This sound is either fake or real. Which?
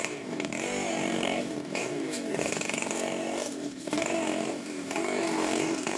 fake